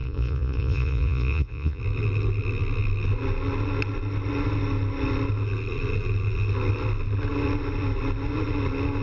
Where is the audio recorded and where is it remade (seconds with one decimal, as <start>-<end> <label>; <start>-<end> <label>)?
0.0-1.8 remade; 1.8-9.0 recorded